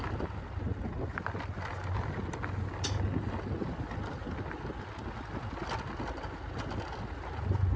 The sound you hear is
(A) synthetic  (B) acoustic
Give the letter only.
B